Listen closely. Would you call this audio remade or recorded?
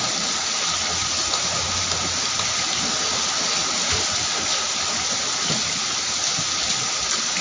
recorded